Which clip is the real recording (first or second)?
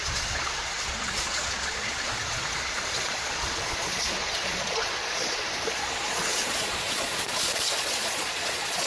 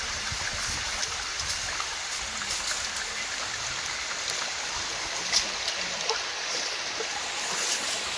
second